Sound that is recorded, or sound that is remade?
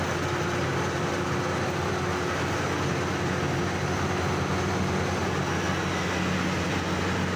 recorded